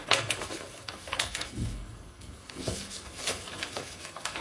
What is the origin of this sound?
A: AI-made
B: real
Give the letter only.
A